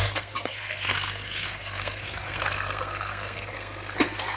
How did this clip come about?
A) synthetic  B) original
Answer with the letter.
A